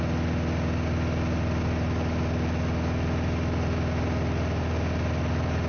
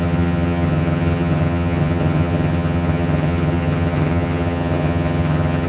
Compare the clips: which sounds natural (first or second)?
first